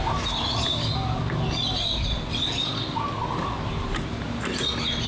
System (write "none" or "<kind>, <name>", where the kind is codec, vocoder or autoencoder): none